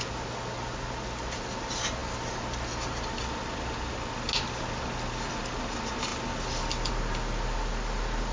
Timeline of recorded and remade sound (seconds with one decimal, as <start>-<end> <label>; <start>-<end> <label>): 0.0-8.3 recorded